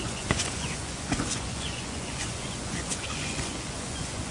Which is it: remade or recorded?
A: remade